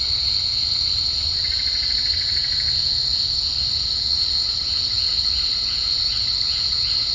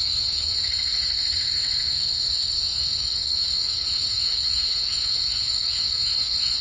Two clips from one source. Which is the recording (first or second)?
first